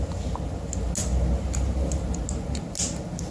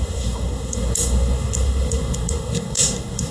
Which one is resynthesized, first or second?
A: second